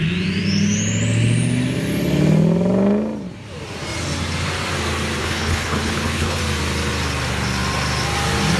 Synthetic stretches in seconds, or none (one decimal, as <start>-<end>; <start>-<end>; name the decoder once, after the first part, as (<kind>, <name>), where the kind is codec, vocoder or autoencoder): 5.2-6.4 (codec, HILCodec)